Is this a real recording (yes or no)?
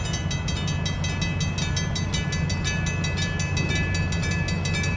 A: yes